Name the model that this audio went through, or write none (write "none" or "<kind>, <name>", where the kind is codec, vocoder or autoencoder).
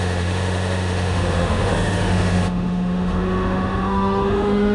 autoencoder, DAC-VAE